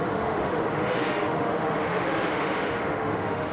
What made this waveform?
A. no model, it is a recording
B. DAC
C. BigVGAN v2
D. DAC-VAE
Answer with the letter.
D